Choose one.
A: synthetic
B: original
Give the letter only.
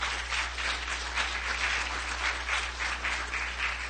B